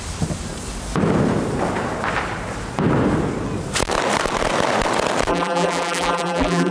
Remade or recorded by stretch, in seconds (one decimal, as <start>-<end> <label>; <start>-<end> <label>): 0.0-5.3 recorded; 5.3-6.7 remade